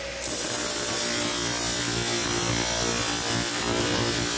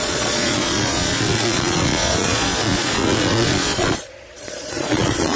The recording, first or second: first